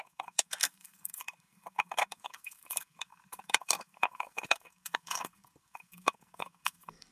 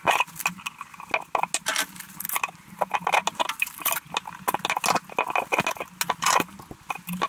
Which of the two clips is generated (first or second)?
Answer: first